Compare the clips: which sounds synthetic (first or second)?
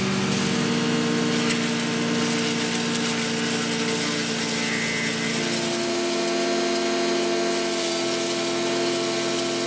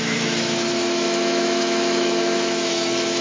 second